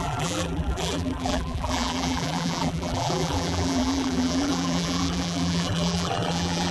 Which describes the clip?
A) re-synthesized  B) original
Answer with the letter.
A